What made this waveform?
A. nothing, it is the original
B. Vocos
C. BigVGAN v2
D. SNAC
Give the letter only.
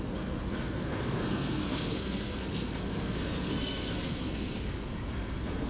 D